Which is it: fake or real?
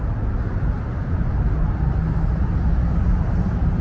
real